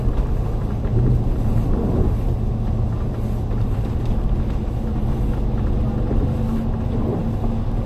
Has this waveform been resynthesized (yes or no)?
no